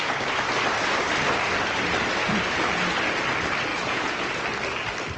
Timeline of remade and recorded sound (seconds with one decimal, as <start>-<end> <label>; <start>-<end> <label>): 0.0-3.7 recorded; 3.7-4.3 remade; 4.3-5.2 recorded